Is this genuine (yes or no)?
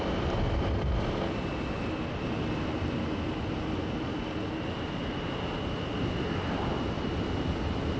yes